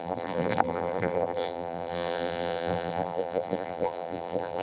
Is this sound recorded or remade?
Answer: remade